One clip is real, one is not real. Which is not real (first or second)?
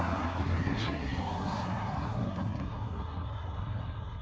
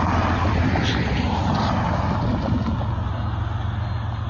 first